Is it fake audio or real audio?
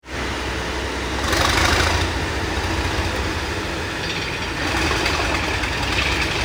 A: real